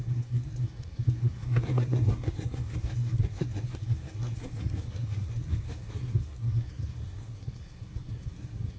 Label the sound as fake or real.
fake